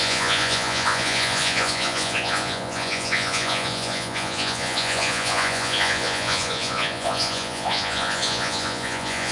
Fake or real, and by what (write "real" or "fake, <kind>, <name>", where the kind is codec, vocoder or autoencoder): fake, vocoder, Vocos